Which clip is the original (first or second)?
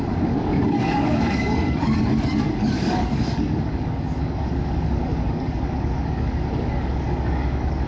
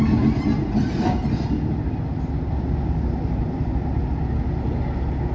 second